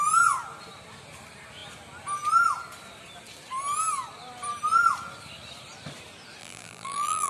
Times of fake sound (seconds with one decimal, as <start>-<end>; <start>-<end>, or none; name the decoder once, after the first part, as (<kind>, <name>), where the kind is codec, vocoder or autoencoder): 6.4-7.3 (vocoder, BigVGAN v2)